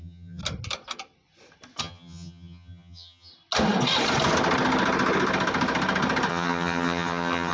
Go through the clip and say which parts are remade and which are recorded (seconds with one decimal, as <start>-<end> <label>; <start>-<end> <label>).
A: 0.0-0.4 remade; 0.4-1.8 recorded; 1.8-3.3 remade; 3.3-6.3 recorded; 6.3-7.5 remade

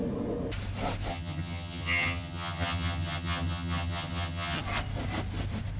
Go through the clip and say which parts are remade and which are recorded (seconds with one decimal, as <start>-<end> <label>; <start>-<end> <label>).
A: 0.0-1.1 recorded; 1.1-4.6 remade; 4.6-5.8 recorded